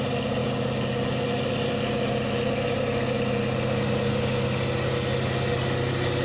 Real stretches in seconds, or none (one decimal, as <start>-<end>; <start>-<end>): 0.0-6.2